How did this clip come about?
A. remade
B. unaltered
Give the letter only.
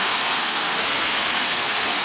A